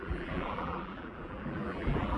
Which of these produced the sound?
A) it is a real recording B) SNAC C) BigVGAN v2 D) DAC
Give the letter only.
C